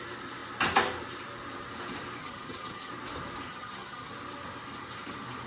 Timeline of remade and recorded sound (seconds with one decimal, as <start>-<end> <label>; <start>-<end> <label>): 0.0-2.2 recorded; 2.2-2.9 remade; 2.9-3.5 recorded; 3.5-4.1 remade; 4.1-5.5 recorded